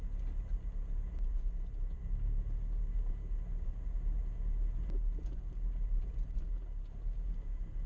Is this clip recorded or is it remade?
recorded